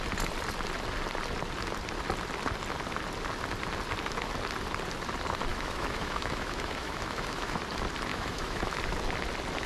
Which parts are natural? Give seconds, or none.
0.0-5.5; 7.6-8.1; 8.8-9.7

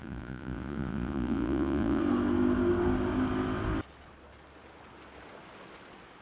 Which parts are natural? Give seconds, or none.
2.0-6.2

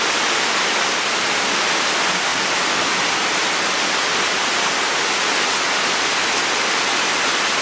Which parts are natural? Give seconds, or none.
0.0-7.6